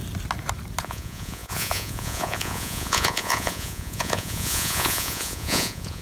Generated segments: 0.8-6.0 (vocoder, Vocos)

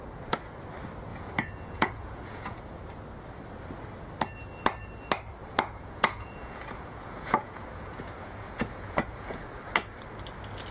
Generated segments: 1.1-2.6 (vocoder, Vocos); 5.4-9.4

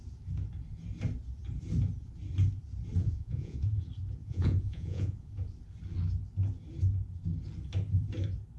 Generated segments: 3.0-3.8 (vocoder, Vocos); 4.2-5.3

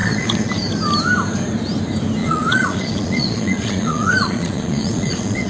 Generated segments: 0.0-0.5 (vocoder, Vocos); 2.2-5.5

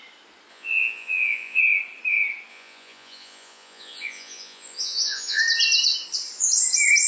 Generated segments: 0.5-1.6 (vocoder, Vocos); 2.5-5.4

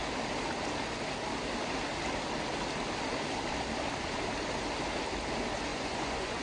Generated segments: 5.7-6.4 (vocoder, Vocos)